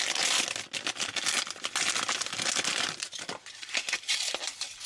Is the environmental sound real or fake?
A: real